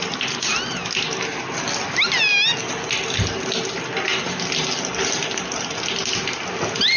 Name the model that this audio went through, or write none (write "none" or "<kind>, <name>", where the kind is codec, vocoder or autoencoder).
none